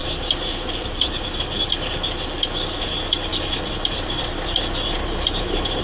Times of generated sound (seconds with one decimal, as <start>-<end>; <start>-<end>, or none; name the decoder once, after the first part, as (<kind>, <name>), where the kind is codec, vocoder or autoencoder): 3.3-5.8 (vocoder, BigVGAN v2)